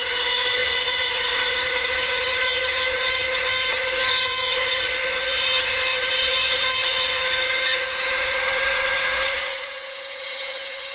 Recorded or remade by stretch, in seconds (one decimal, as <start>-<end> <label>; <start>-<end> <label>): 0.0-10.9 remade